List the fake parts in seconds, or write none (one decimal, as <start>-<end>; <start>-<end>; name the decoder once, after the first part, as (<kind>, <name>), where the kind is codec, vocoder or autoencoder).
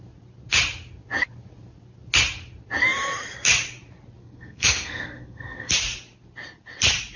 4.2-5.7 (codec, SNAC)